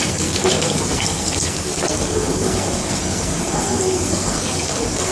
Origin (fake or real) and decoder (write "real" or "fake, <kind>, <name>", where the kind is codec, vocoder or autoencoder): fake, codec, SNAC